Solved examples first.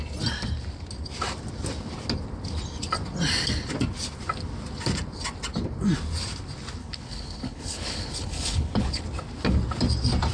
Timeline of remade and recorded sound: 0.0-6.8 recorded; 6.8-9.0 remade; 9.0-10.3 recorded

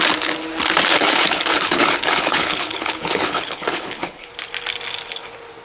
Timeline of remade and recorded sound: 0.0-0.9 recorded; 0.9-4.3 remade; 4.3-5.6 recorded

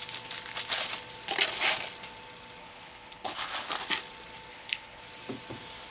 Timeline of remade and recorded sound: 0.0-2.6 recorded; 2.6-3.7 remade; 3.7-4.5 recorded; 4.5-5.0 remade; 5.0-5.9 recorded

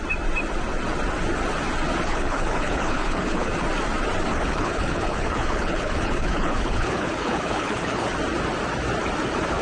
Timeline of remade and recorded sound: 0.0-2.1 recorded; 2.1-3.5 remade; 3.5-4.3 recorded; 4.3-8.1 remade; 8.1-9.6 recorded